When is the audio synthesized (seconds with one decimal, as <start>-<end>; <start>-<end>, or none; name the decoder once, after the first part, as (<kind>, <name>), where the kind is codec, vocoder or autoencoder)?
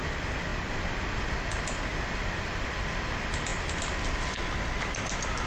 1.9-3.1 (vocoder, BigVGAN v2)